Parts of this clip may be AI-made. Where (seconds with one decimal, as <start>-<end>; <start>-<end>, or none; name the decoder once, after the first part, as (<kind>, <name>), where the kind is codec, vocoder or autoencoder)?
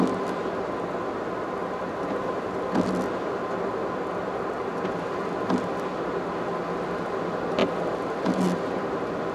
none